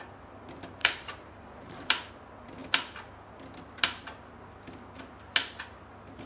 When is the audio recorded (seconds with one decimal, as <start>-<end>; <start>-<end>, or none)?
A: 0.0-0.8; 2.1-6.3